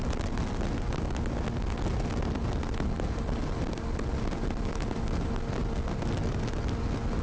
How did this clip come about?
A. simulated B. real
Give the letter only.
B